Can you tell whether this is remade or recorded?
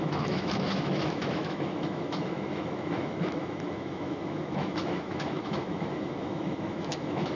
remade